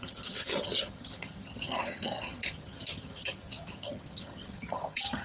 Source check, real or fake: fake